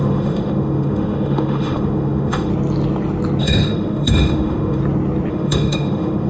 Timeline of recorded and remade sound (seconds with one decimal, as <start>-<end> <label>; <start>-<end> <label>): 0.0-2.5 remade; 2.5-3.4 recorded; 3.4-4.8 remade; 4.8-5.3 recorded; 5.3-6.3 remade